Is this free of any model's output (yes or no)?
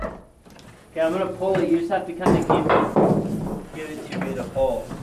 yes